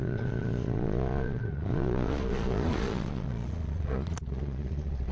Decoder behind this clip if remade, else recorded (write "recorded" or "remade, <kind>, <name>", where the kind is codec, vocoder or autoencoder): remade, vocoder, Vocos